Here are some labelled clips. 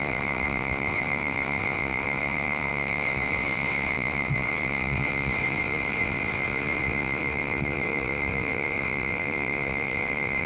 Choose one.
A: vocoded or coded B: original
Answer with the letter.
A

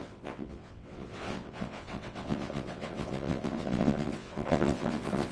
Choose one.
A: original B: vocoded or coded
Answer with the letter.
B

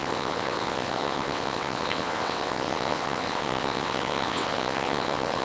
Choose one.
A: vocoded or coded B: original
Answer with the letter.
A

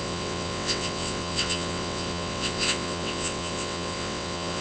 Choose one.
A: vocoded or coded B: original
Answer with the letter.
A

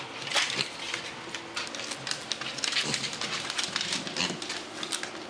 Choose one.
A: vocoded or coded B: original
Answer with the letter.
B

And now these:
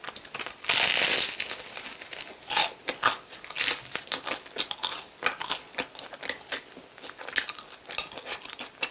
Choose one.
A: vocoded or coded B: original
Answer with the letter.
B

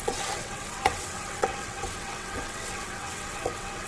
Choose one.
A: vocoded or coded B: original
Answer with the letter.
A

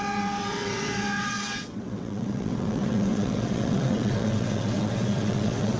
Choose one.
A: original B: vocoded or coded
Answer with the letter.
B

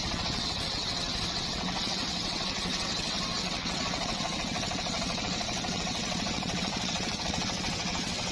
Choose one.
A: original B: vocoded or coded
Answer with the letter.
B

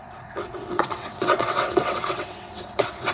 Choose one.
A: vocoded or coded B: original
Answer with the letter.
A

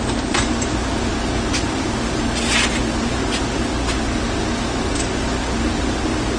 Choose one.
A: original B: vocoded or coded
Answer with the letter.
A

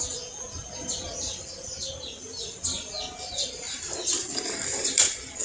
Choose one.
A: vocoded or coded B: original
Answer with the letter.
B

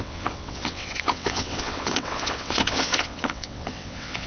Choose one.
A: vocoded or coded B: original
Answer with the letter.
A